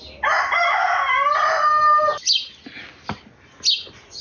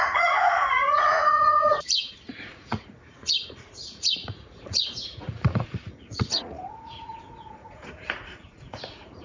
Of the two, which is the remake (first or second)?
second